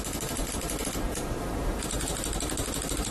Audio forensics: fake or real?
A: real